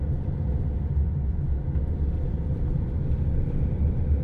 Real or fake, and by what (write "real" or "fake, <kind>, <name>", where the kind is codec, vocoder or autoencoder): real